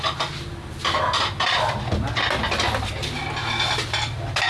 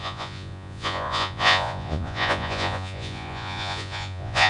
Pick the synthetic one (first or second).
second